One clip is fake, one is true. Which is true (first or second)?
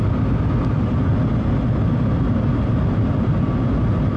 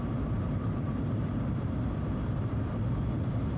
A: first